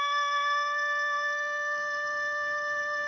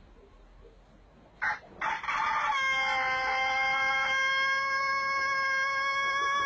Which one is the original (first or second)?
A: second